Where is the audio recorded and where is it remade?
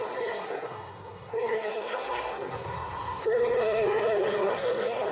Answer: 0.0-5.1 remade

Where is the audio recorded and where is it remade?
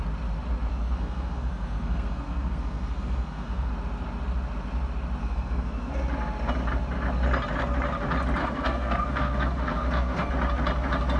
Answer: 0.0-0.7 recorded; 0.7-3.7 remade; 3.7-5.2 recorded; 5.2-5.9 remade; 5.9-8.4 recorded; 8.4-10.3 remade; 10.3-11.2 recorded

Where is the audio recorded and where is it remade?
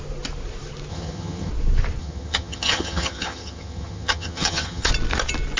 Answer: 0.0-0.9 recorded; 0.9-1.5 remade; 1.5-2.0 recorded; 2.0-4.9 remade; 4.9-5.6 recorded